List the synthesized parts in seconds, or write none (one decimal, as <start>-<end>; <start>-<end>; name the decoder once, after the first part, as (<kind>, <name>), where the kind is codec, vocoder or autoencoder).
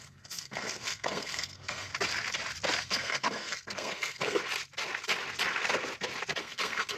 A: 0.0-1.9 (codec, SNAC); 2.8-4.4; 6.4-7.0